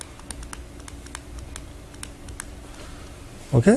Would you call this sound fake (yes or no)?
no